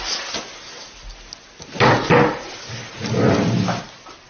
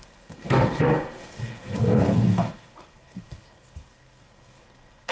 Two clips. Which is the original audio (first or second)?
first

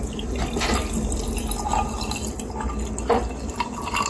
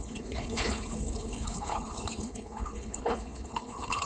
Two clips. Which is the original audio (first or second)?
first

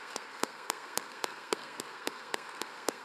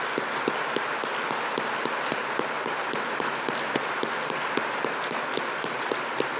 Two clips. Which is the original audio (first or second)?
second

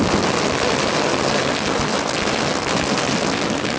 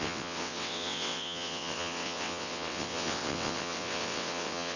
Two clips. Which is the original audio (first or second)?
first